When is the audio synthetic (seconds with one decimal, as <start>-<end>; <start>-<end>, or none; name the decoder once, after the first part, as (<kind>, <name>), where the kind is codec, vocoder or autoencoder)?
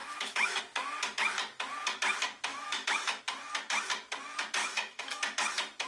0.0-0.6 (autoencoder, DAC-VAE); 2.5-3.2; 4.6-5.2